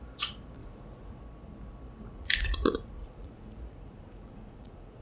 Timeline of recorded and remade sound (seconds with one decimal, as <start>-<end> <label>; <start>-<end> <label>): 0.0-0.6 recorded; 0.6-1.2 remade; 1.2-2.0 recorded; 2.0-5.0 remade

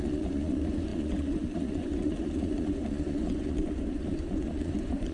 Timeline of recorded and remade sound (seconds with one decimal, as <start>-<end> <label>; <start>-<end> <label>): 0.0-5.1 remade

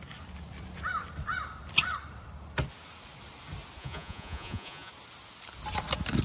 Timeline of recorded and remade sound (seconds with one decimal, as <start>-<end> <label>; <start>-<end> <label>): 0.0-3.8 recorded; 3.8-4.9 remade; 4.9-6.2 recorded

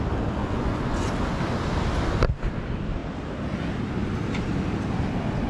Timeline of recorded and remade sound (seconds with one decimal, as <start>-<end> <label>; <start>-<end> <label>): 0.0-0.4 recorded; 0.4-1.1 remade; 1.1-5.5 recorded